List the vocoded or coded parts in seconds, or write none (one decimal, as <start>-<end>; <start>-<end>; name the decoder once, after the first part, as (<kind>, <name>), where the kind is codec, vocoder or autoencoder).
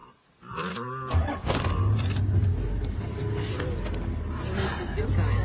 none